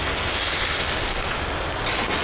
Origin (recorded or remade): recorded